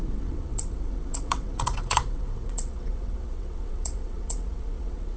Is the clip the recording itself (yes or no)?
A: no